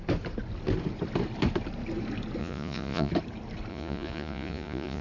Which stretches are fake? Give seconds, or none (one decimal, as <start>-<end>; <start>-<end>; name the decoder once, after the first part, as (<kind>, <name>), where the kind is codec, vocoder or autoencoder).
2.4-3.1 (vocoder, Vocos); 3.7-5.0